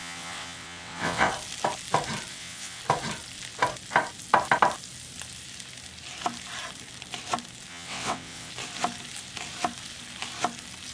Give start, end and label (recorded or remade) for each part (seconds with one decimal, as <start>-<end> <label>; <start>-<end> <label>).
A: 0.0-1.3 remade; 1.3-2.3 recorded; 2.3-2.8 remade; 2.8-7.7 recorded; 7.7-8.5 remade; 8.5-10.9 recorded